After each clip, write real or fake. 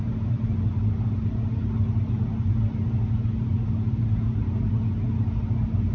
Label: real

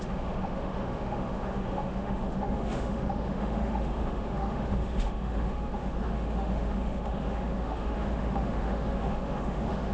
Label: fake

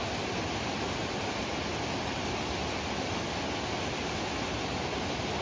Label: real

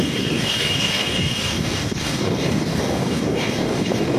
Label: fake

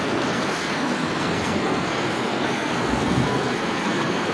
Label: fake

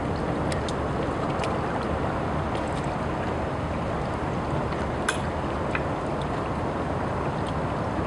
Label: real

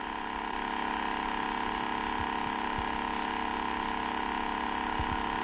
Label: real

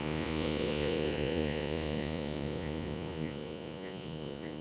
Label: fake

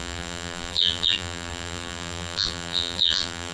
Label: fake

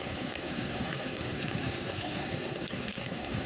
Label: fake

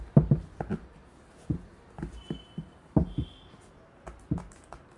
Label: real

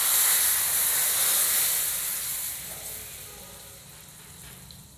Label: real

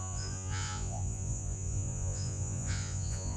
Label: fake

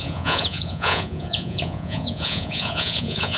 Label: fake